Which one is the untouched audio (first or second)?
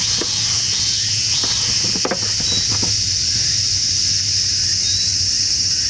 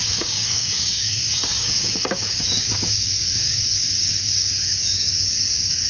first